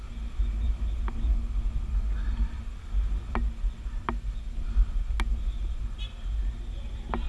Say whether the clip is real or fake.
real